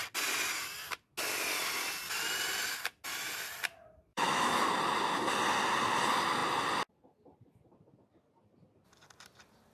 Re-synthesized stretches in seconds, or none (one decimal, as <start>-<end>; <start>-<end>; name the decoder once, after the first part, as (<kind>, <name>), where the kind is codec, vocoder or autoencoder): 4.1-4.7 (autoencoder, DAC-VAE)